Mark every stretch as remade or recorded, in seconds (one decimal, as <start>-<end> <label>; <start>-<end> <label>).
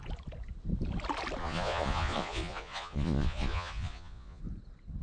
0.0-1.4 recorded; 1.4-4.4 remade; 4.4-5.0 recorded